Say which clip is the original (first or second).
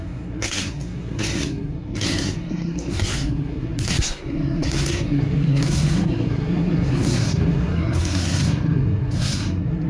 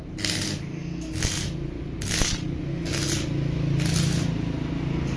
second